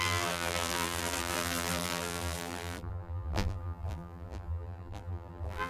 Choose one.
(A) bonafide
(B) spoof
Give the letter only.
B